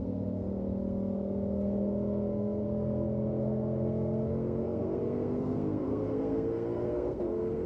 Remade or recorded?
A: remade